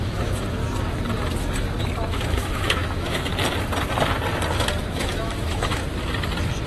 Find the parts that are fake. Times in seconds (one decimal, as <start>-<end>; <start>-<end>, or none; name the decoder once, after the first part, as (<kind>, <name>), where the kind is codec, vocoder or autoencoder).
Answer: 0.0-0.6 (autoencoder, DAC-VAE); 2.1-3.3; 4.9-5.8